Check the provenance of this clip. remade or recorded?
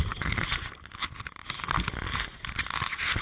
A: recorded